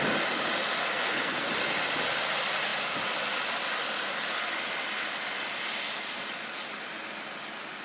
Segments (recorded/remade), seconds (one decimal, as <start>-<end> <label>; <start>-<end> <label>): 0.0-0.8 recorded; 0.8-1.5 remade; 1.5-7.8 recorded